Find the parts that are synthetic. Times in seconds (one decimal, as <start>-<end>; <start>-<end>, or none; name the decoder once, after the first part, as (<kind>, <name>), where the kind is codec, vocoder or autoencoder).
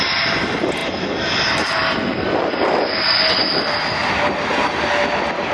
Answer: none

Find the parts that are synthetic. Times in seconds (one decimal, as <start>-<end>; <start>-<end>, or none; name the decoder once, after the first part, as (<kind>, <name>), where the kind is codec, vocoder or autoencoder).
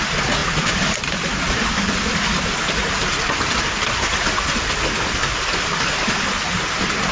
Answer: 0.4-4.2 (vocoder, BigVGAN v2)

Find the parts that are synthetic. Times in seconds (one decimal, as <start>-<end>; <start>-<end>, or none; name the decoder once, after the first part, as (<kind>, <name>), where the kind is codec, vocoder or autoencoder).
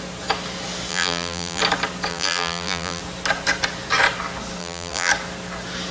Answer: 0.9-1.6 (vocoder, BigVGAN v2); 2.1-3.0; 4.6-5.1